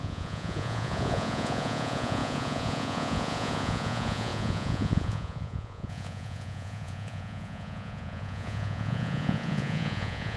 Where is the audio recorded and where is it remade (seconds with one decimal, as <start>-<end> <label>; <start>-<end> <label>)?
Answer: 0.0-10.4 remade